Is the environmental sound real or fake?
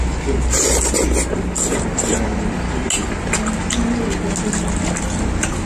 real